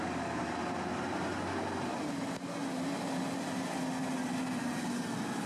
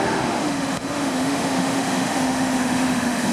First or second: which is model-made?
second